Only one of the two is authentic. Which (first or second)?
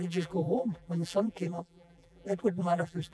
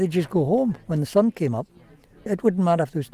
second